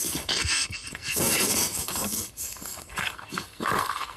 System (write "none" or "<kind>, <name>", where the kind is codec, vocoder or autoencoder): codec, SNAC